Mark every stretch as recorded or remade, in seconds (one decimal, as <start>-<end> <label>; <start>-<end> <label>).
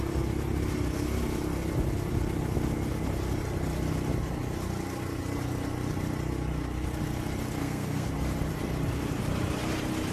0.0-7.6 recorded; 7.6-8.1 remade; 8.1-10.1 recorded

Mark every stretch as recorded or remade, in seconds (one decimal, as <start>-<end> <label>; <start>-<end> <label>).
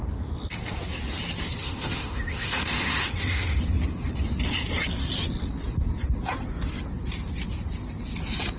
0.0-1.6 recorded; 1.6-3.6 remade; 3.6-8.6 recorded